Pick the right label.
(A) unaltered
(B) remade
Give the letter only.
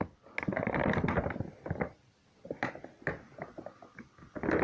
A